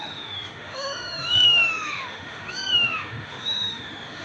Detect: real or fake fake